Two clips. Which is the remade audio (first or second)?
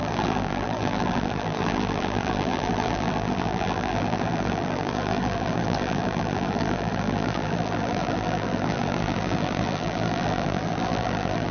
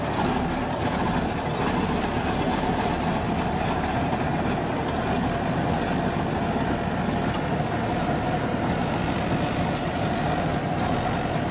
first